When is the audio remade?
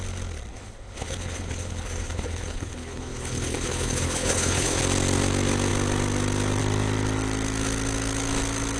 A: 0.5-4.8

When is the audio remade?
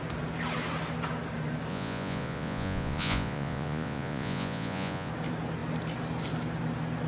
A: 1.7-5.1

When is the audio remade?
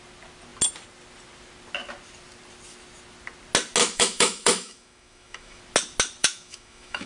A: 3.8-5.6; 6.2-7.1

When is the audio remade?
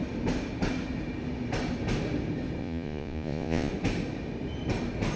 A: 2.6-3.7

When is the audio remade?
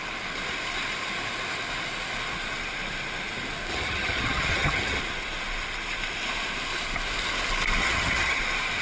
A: 3.7-5.0; 7.8-8.4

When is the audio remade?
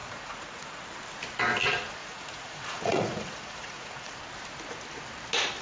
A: 0.0-0.8; 2.0-4.2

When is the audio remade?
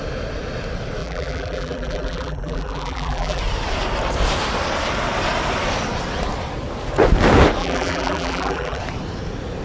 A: 1.0-3.4; 7.6-8.8